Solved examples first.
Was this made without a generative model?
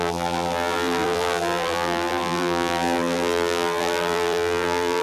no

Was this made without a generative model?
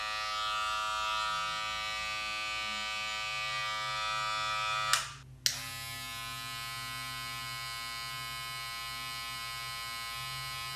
yes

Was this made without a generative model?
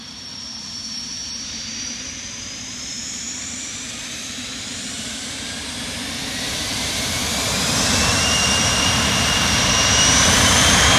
no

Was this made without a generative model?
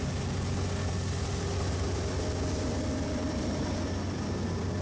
yes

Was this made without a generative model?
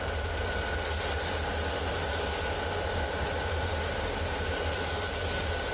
yes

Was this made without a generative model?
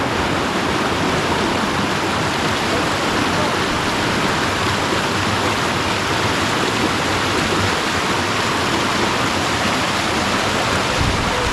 yes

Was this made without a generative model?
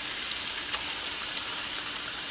no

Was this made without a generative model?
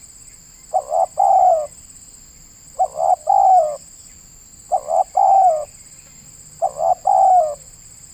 no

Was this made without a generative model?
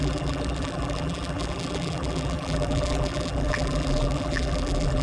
no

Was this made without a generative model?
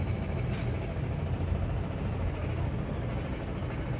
yes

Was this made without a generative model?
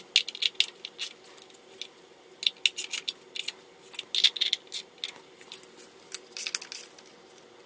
yes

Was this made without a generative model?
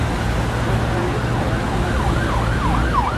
yes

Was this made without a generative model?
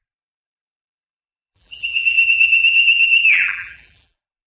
no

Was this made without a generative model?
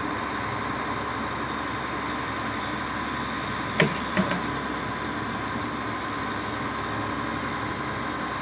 yes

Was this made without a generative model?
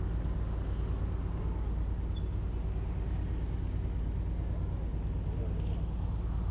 yes